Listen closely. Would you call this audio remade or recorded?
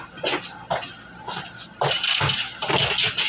recorded